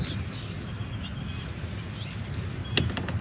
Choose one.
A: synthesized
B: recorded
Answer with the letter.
B